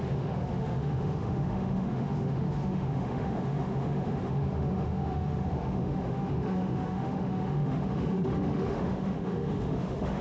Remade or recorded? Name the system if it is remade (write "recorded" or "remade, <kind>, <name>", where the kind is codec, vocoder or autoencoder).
remade, autoencoder, DAC-VAE